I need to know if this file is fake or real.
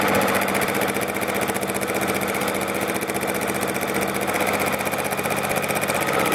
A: real